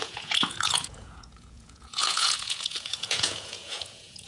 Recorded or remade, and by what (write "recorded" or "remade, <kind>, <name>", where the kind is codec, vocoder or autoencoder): remade, vocoder, Vocos